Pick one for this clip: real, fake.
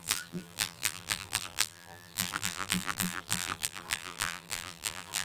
fake